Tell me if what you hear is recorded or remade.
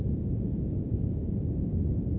remade